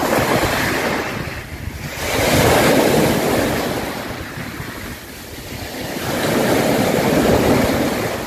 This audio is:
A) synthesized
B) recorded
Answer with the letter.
B